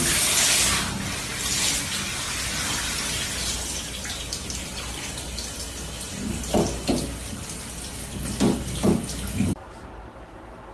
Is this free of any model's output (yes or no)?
yes